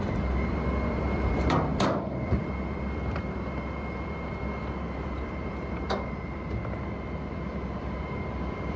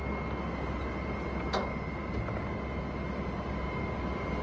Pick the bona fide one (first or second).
second